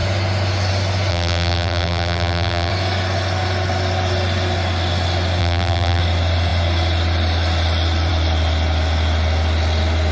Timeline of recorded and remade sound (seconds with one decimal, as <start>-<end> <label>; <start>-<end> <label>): 0.0-1.1 recorded; 1.1-2.7 remade; 2.7-5.4 recorded; 5.4-6.0 remade; 6.0-10.1 recorded